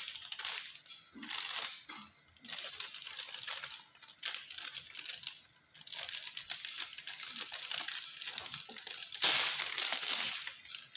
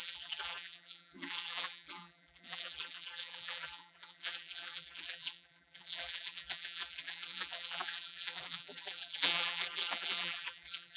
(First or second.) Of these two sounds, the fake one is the second